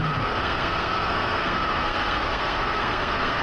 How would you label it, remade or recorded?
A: remade